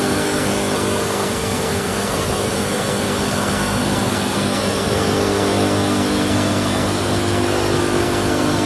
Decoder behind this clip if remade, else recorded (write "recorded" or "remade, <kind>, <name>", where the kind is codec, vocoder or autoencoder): remade, codec, SNAC